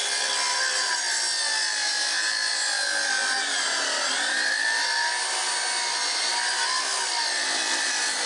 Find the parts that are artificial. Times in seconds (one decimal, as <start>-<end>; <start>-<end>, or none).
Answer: none